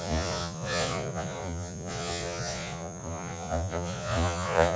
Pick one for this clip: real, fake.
fake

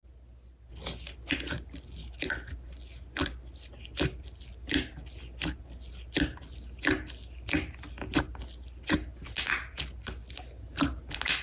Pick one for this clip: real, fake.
real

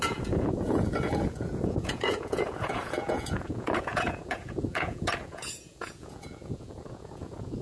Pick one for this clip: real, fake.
fake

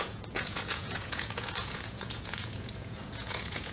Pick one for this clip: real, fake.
fake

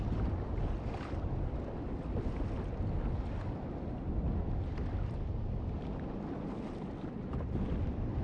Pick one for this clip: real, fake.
real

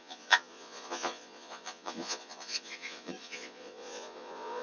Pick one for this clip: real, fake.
fake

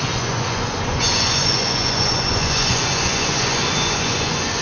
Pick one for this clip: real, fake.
fake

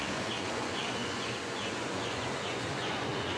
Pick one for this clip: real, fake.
fake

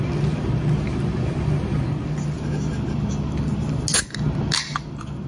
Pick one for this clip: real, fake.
real